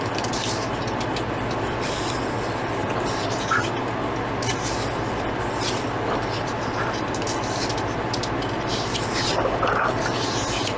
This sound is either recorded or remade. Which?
recorded